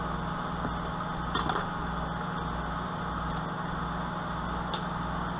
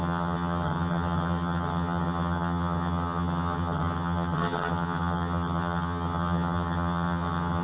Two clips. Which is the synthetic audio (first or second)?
second